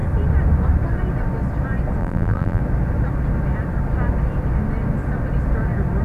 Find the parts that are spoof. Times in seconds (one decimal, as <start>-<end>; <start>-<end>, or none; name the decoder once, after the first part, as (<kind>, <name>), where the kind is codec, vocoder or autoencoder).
2.0-2.6 (vocoder, BigVGAN v2)